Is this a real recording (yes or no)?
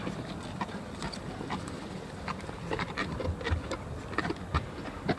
yes